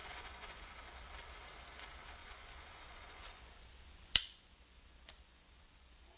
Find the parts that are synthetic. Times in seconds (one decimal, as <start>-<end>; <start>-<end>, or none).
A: 0.0-0.7; 2.2-6.2